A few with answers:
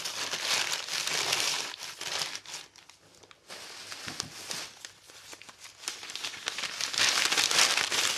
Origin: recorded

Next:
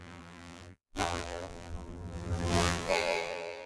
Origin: remade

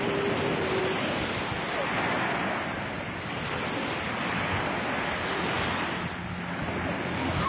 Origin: recorded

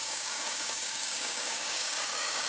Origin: remade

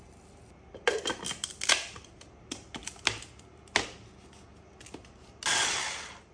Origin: recorded